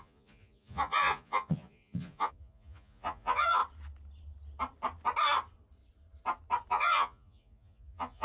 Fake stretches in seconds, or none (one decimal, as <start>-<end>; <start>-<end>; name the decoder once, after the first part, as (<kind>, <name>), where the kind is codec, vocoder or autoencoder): 0.0-3.6 (vocoder, Vocos); 6.7-8.2